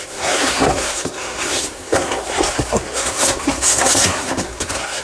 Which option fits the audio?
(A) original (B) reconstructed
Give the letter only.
B